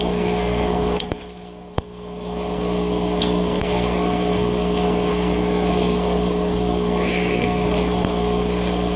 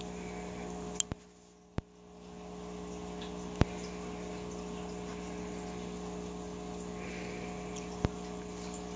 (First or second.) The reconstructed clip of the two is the first